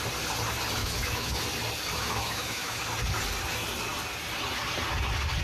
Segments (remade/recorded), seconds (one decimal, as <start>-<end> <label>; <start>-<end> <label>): 0.0-0.8 recorded; 0.8-1.4 remade; 1.4-2.0 recorded; 2.0-2.8 remade; 2.8-5.4 recorded

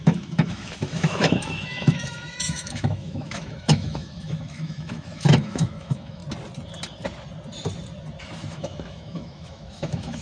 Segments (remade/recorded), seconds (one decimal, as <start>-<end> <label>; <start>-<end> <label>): 0.0-6.2 remade; 6.2-8.5 recorded; 8.5-10.2 remade

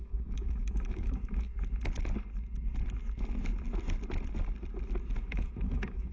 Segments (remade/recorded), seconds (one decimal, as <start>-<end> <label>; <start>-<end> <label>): 0.0-1.5 remade; 1.5-5.2 recorded; 5.2-6.1 remade

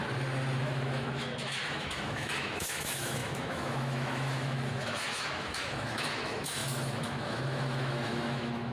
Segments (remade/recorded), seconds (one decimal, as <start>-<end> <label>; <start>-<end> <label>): 0.0-0.6 recorded; 0.6-8.7 remade